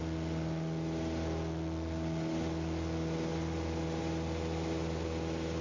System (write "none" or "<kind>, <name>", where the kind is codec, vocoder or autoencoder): none